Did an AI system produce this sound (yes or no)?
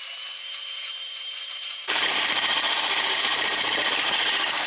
yes